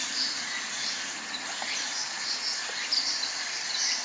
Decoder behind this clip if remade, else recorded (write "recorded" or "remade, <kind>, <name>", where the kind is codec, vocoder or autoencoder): recorded